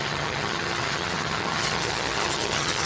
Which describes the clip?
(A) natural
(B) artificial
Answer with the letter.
B